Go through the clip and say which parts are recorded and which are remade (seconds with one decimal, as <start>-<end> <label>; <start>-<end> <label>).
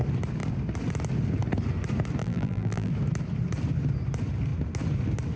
0.0-2.2 recorded; 2.2-2.9 remade; 2.9-5.4 recorded